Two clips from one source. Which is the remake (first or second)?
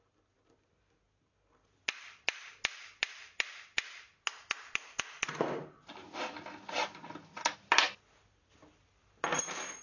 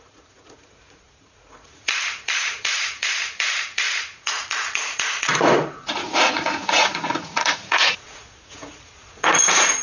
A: second